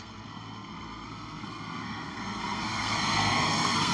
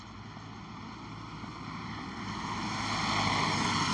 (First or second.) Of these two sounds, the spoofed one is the first